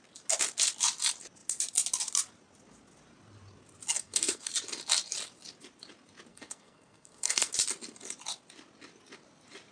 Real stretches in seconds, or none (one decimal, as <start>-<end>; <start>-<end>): 0.0-3.9; 4.5-6.3; 7.5-9.7

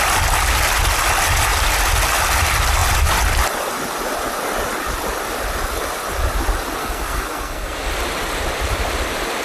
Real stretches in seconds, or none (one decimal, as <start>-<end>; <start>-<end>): 0.0-6.8; 7.9-9.4

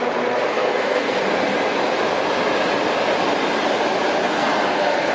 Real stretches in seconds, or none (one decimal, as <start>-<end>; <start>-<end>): 0.0-0.5; 1.2-4.2